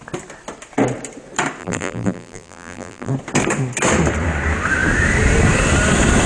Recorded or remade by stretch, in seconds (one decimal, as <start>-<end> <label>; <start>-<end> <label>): 0.0-1.6 recorded; 1.6-3.1 remade; 3.1-6.3 recorded